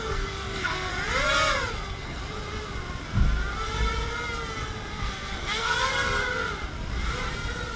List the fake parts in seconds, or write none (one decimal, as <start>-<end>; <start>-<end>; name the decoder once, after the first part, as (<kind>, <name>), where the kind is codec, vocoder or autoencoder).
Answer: 0.0-0.9 (codec, SNAC); 1.7-2.2; 4.9-5.9